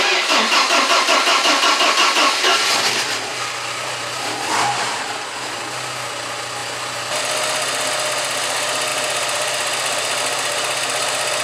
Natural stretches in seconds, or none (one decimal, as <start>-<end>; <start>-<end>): 0.0-3.3; 5.0-6.6; 7.2-8.9; 10.2-11.4